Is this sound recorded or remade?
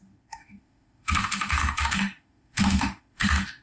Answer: remade